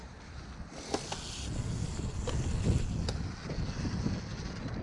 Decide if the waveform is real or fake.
real